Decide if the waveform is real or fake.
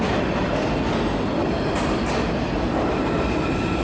real